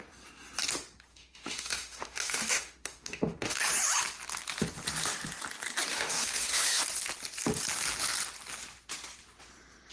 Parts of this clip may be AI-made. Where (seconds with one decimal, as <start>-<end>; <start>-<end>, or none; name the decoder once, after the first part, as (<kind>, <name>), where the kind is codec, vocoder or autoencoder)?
1.1-3.7 (autoencoder, DAC-VAE); 5.9-6.8

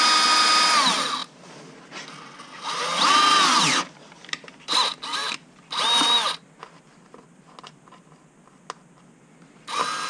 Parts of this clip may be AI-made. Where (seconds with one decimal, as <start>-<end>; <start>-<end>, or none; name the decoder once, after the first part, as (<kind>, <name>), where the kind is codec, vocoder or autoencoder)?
none

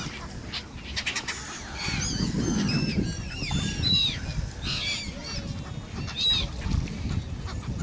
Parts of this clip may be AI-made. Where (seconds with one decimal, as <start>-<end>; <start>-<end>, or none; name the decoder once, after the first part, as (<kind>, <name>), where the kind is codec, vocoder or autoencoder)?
none

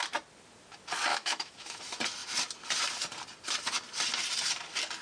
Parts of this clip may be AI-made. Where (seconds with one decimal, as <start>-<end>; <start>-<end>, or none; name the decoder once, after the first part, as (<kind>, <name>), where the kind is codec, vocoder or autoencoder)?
1.1-1.8 (autoencoder, DAC-VAE)

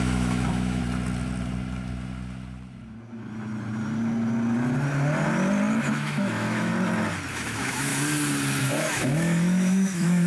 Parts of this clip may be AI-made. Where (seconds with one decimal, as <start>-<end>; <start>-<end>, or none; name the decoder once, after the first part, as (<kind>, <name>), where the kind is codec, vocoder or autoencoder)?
0.0-0.8 (autoencoder, DAC-VAE); 5.9-6.7; 7.3-7.9; 8.6-10.3

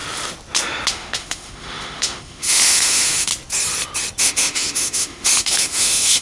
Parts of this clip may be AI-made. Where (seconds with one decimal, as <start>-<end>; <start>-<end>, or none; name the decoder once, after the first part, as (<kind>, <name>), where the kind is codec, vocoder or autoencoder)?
0.9-3.3 (autoencoder, DAC-VAE); 4.2-6.2